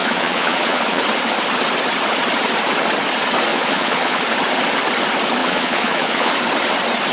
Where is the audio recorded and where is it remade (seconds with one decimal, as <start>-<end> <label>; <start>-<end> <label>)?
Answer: 0.0-1.0 remade; 1.0-3.5 recorded; 3.5-4.2 remade; 4.2-5.4 recorded; 5.4-6.3 remade; 6.3-7.1 recorded